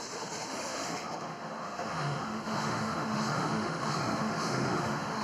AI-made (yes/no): yes